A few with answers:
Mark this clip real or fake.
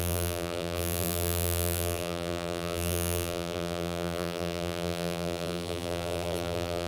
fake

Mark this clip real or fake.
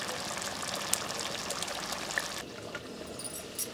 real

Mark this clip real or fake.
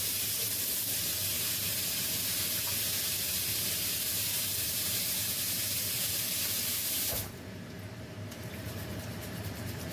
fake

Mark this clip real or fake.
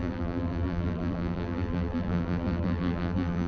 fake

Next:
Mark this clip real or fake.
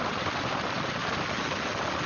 real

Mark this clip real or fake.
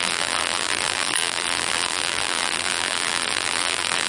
fake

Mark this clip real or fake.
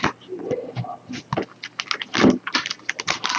real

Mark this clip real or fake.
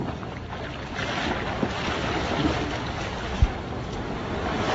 real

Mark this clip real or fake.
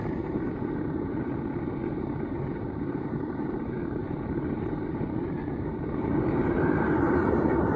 fake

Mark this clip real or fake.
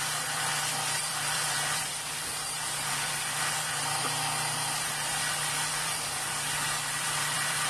fake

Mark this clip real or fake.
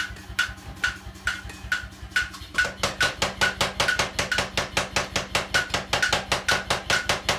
real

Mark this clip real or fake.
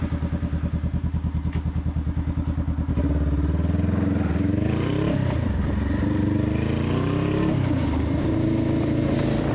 real